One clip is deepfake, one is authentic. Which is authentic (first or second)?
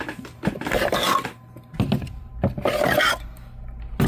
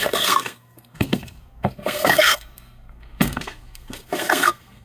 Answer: first